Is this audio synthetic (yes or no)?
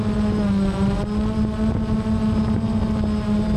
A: no